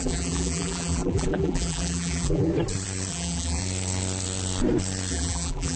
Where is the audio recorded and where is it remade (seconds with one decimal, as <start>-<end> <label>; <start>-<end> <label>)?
0.0-2.5 remade; 2.5-3.1 recorded; 3.1-3.6 remade; 3.6-5.1 recorded; 5.1-5.8 remade